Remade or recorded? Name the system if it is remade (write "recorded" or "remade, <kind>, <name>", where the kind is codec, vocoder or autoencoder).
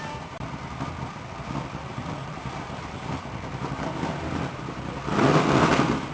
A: remade, vocoder, BigVGAN v2